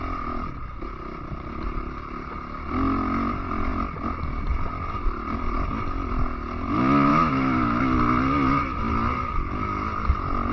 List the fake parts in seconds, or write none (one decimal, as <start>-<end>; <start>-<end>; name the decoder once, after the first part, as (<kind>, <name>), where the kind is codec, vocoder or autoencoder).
7.1-7.8 (autoencoder, DAC-VAE)

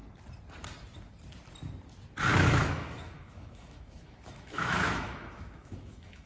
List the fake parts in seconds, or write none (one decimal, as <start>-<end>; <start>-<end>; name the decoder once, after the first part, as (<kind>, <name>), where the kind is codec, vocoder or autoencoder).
2.3-6.3 (autoencoder, DAC-VAE)

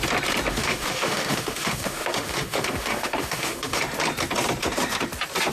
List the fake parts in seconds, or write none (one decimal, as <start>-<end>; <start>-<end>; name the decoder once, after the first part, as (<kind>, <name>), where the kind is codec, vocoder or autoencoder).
0.5-3.8 (autoencoder, DAC-VAE)